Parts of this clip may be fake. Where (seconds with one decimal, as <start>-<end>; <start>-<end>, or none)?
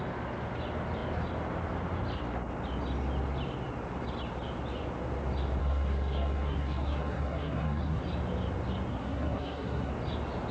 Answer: 5.6-8.0; 8.9-9.9